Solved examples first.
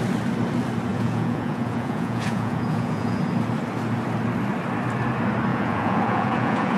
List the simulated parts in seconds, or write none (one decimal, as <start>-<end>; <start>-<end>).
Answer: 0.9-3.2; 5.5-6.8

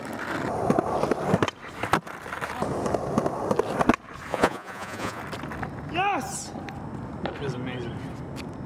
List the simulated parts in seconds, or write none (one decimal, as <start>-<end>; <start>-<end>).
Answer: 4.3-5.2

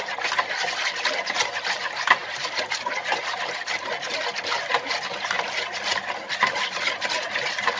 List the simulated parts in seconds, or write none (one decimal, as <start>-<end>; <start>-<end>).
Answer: none

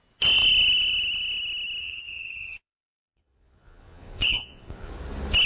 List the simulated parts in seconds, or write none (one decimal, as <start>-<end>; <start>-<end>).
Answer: 1.8-4.9

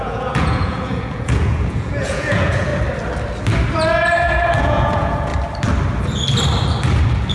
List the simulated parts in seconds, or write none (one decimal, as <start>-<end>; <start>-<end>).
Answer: 0.0-2.7; 4.6-5.3